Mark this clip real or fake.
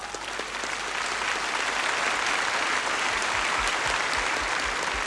real